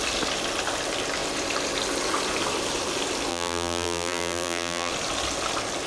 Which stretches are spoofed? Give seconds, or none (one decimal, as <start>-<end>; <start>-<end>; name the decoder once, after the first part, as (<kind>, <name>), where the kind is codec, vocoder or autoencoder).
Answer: 3.3-4.9 (vocoder, BigVGAN v2)